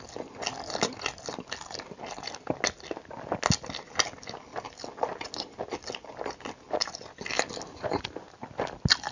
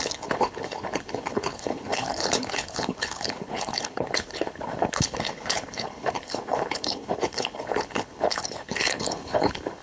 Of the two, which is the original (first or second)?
first